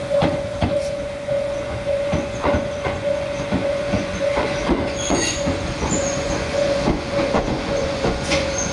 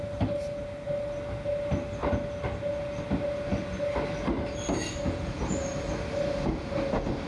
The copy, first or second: first